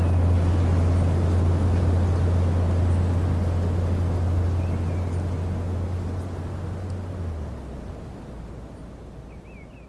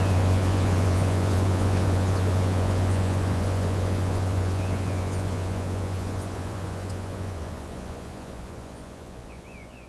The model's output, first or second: second